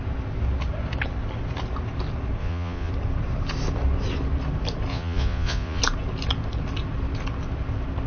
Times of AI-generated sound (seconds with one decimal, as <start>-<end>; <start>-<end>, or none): 2.4-2.9; 4.9-5.8